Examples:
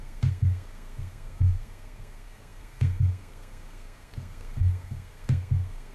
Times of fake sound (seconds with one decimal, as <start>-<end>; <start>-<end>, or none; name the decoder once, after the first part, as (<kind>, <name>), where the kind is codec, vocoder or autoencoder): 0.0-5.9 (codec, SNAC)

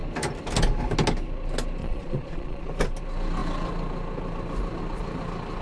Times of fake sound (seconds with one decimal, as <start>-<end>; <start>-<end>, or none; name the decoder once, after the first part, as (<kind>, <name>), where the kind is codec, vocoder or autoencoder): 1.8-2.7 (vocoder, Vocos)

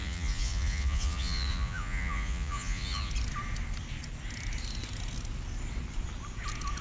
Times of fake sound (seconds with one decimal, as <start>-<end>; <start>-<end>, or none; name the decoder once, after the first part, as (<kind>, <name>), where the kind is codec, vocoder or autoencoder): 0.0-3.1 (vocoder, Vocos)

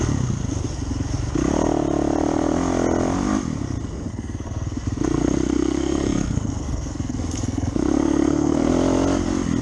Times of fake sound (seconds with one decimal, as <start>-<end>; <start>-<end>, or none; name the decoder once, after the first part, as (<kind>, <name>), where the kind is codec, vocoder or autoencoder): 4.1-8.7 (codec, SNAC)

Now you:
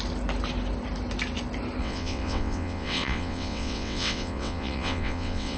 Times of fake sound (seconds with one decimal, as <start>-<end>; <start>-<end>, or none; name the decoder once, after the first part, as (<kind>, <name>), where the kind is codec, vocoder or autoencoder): 1.8-5.6 (vocoder, WaveNeXt)

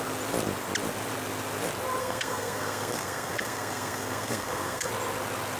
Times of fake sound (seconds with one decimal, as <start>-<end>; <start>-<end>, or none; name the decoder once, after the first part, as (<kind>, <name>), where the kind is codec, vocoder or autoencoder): 2.0-4.9 (codec, SNAC)

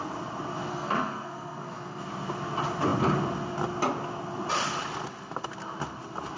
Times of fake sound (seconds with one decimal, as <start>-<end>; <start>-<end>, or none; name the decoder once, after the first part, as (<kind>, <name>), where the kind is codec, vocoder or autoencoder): 0.7-2.0 (codec, SNAC)

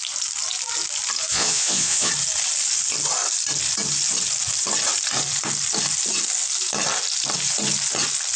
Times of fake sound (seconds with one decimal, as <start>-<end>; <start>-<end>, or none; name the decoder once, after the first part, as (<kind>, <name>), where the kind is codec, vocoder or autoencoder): 1.3-2.1 (vocoder, Vocos)